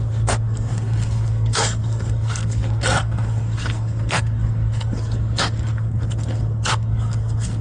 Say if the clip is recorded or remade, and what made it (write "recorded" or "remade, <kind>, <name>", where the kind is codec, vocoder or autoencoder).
remade, codec, SNAC